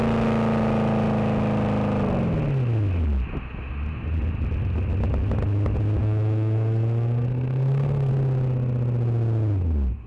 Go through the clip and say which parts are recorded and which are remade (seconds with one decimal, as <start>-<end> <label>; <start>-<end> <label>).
0.0-6.0 recorded; 6.0-8.1 remade; 8.1-10.1 recorded